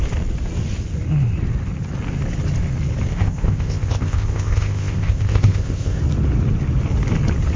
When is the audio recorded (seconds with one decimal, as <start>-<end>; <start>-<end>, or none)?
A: 0.0-3.1; 6.0-7.6